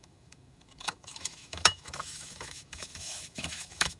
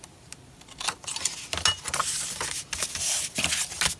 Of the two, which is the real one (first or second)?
second